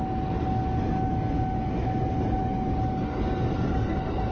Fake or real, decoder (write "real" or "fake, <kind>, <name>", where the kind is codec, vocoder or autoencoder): real